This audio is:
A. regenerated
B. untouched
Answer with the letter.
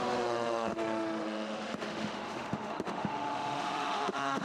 A